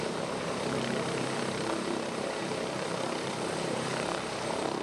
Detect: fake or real fake